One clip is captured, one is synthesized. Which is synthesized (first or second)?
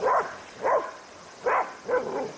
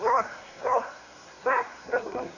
second